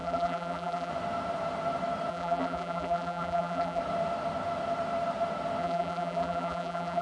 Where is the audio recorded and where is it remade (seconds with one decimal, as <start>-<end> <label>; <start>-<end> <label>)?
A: 0.0-0.9 remade; 0.9-2.1 recorded; 2.1-3.8 remade; 3.8-5.6 recorded; 5.6-7.0 remade